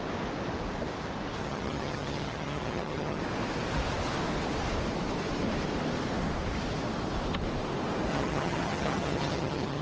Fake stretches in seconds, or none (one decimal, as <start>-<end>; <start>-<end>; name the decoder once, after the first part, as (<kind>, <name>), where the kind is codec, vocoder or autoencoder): 1.4-3.2 (vocoder, HiFi-GAN); 8.1-9.8